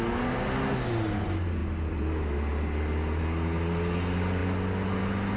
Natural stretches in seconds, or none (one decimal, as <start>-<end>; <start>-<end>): 0.0-5.4